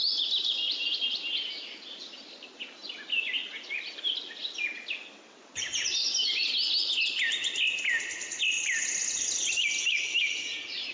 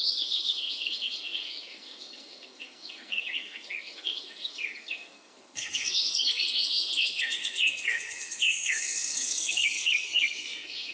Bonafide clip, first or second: first